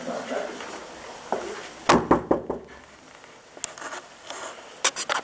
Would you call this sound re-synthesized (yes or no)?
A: no